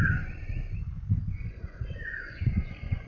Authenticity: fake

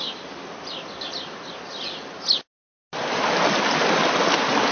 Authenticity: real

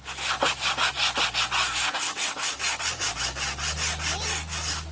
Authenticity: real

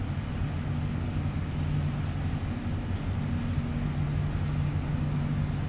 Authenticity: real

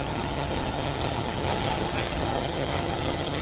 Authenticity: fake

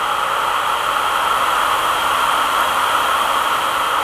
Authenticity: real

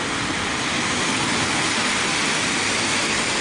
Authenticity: real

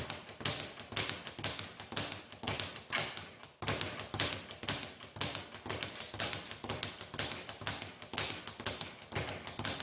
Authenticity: real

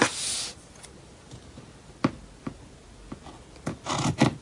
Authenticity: real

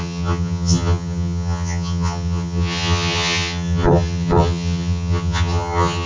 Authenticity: fake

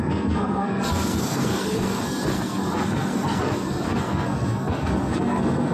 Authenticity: fake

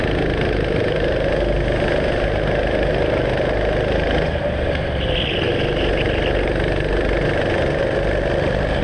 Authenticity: real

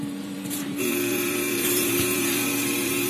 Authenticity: fake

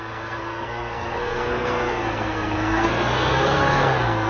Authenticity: fake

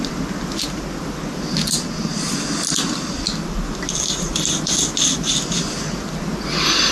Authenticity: real